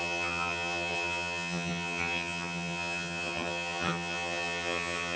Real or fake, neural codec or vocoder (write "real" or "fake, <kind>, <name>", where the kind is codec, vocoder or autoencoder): fake, vocoder, HiFi-GAN